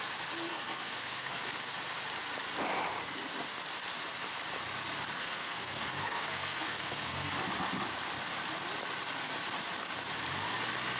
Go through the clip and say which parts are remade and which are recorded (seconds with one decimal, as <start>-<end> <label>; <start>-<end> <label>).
0.0-0.5 recorded; 0.5-1.6 remade; 1.6-5.2 recorded; 5.2-7.3 remade; 7.3-11.0 recorded